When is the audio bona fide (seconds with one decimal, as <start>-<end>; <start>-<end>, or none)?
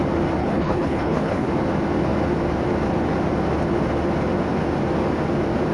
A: 0.0-0.4; 1.5-5.7